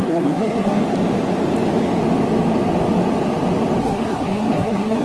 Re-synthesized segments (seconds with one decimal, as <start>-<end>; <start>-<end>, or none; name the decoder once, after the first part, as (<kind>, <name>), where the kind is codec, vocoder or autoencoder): 0.0-0.8 (codec, SNAC); 3.8-5.0